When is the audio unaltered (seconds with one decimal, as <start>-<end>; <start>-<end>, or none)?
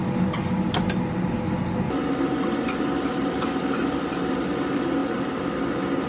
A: 0.0-6.1